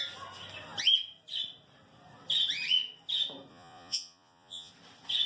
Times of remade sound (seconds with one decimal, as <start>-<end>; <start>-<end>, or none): 3.5-4.7